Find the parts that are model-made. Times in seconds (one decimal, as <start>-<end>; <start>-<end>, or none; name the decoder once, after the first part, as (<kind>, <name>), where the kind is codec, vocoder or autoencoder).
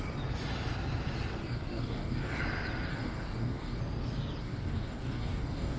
1.4-2.4 (codec, DAC); 2.9-3.8; 4.4-5.8